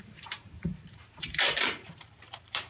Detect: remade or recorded remade